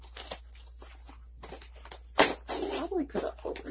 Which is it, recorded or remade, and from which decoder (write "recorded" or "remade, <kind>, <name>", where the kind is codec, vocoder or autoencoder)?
recorded